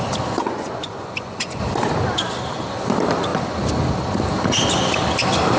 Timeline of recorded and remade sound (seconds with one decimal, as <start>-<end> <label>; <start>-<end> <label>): 0.0-0.4 recorded; 0.4-1.6 remade; 1.6-5.6 recorded